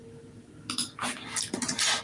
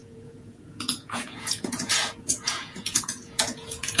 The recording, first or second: first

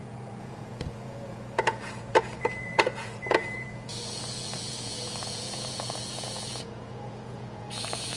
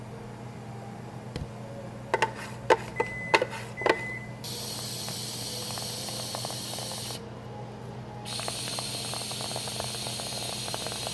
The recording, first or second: second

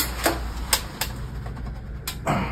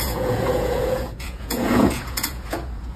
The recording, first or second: first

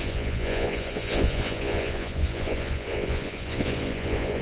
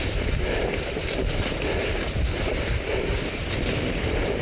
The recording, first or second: second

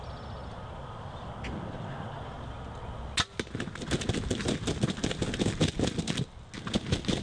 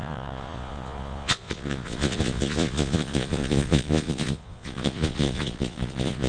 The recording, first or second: first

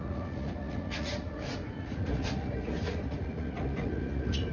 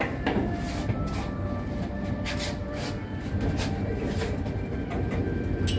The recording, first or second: second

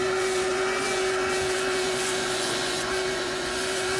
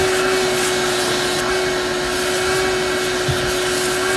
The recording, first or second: second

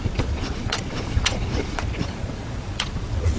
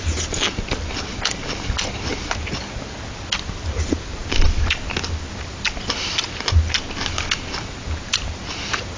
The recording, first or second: second